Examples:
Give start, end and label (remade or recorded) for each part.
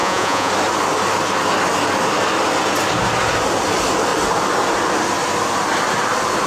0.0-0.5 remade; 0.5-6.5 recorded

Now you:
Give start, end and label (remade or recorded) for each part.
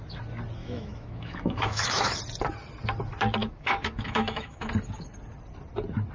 0.0-0.6 recorded; 0.6-2.2 remade; 2.2-3.4 recorded; 3.4-4.7 remade; 4.7-6.1 recorded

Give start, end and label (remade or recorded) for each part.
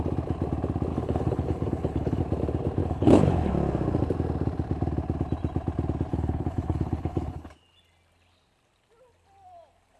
0.0-0.9 recorded; 0.9-2.2 remade; 2.2-2.8 recorded; 2.8-3.5 remade; 3.5-6.1 recorded; 6.1-7.5 remade; 7.5-10.0 recorded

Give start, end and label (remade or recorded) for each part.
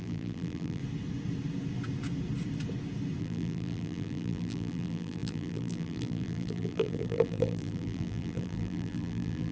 0.0-0.8 remade; 0.8-3.2 recorded; 3.2-9.5 remade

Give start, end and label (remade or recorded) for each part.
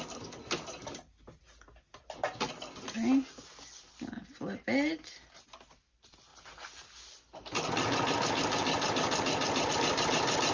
0.0-10.5 recorded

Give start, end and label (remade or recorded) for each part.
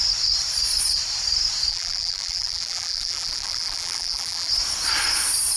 0.0-1.7 recorded; 1.7-4.5 remade; 4.5-5.6 recorded